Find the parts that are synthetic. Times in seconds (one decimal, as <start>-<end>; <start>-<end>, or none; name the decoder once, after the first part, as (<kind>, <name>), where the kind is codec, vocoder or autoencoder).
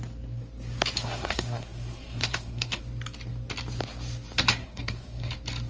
1.0-2.8 (codec, SNAC); 4.6-5.3